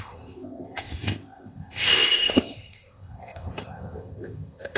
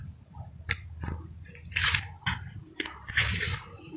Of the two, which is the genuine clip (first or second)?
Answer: second